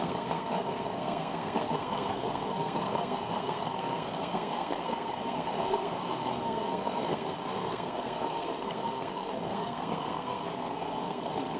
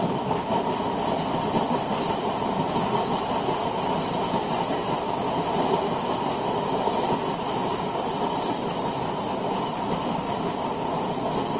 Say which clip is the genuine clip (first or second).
second